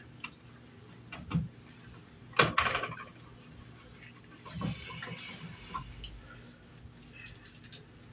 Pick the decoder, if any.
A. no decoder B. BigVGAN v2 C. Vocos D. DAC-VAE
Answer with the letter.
A